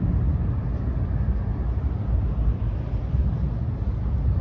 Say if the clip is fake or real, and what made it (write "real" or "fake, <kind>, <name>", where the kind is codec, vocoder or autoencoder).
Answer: real